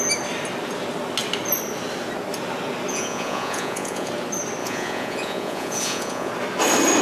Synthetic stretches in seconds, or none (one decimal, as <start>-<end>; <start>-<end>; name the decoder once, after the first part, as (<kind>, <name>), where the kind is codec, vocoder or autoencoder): 2.9-4.1 (vocoder, Vocos); 4.6-6.3